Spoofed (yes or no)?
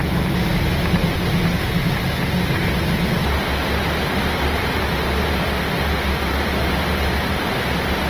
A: no